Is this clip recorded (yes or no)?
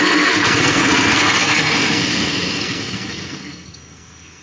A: no